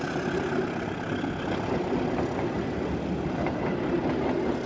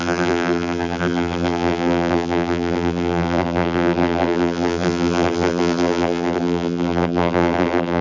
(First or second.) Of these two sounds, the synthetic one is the second